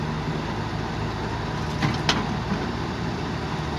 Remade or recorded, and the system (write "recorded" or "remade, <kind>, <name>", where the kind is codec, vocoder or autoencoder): recorded